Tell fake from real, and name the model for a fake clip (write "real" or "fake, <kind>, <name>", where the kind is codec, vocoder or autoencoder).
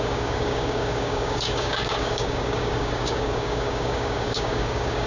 fake, codec, DAC